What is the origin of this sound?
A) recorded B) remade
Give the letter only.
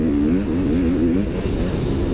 A